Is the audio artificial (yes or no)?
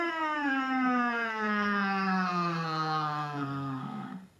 yes